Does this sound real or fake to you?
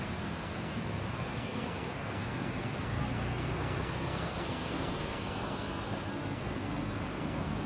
fake